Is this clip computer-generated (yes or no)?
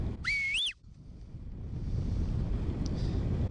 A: no